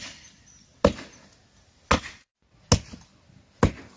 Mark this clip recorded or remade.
recorded